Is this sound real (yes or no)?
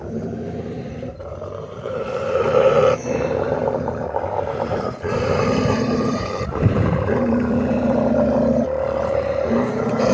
no